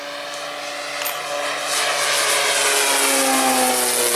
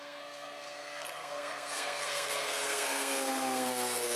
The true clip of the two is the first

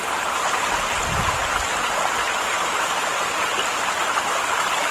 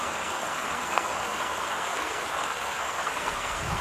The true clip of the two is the first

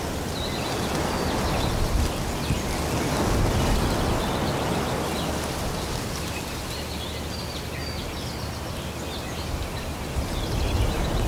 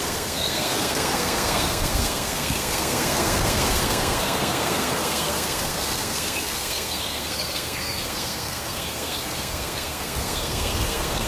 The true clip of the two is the first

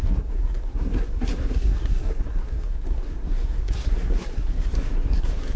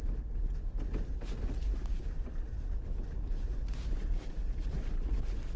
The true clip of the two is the second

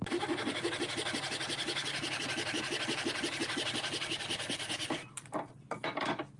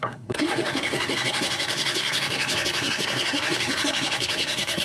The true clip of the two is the first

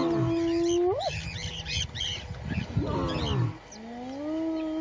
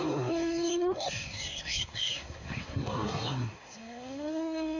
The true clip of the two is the first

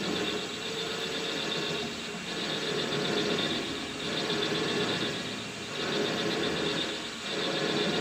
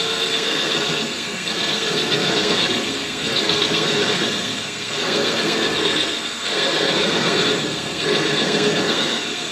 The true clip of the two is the first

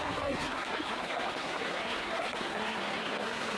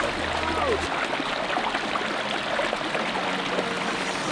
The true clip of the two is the second